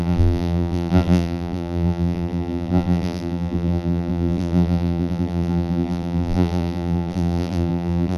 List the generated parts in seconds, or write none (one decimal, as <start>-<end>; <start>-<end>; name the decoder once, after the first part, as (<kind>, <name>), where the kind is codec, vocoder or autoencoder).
0.0-8.2 (vocoder, BigVGAN v2)